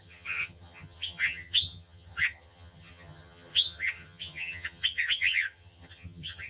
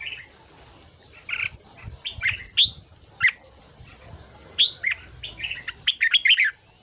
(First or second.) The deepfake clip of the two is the first